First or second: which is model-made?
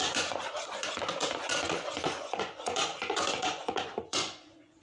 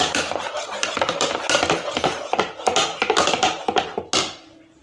first